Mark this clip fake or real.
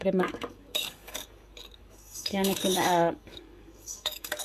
fake